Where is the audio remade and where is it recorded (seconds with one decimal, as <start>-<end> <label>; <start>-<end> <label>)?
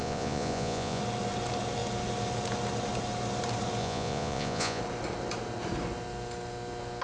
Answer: 0.0-1.0 remade; 1.0-3.8 recorded; 3.8-4.8 remade; 4.8-7.0 recorded